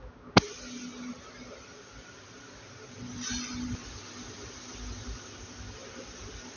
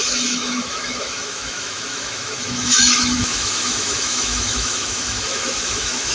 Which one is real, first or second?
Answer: first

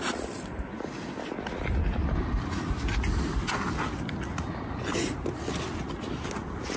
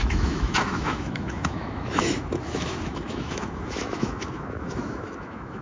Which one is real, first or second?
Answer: first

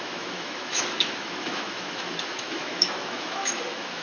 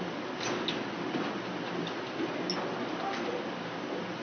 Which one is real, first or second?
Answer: second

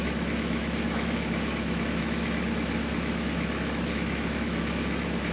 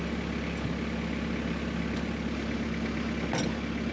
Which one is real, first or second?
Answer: second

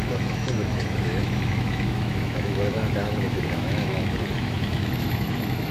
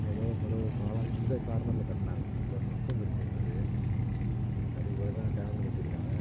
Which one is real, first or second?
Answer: second